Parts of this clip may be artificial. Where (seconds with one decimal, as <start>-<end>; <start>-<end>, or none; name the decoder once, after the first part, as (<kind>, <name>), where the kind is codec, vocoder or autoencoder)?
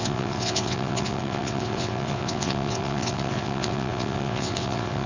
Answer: 0.0-5.1 (vocoder, WaveNeXt)